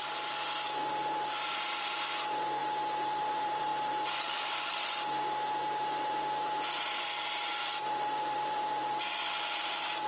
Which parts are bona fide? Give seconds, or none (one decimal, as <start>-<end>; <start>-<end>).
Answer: 0.0-0.9; 2.6-3.2; 3.7-6.9